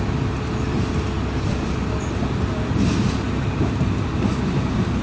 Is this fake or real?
real